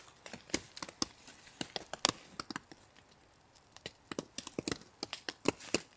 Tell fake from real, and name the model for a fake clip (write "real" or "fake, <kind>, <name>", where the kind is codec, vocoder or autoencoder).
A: real